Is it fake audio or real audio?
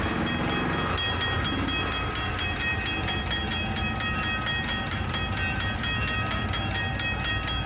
real